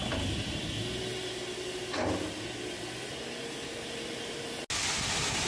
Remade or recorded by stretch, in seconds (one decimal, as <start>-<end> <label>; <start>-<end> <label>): 0.0-1.1 recorded; 1.1-4.4 remade; 4.4-5.5 recorded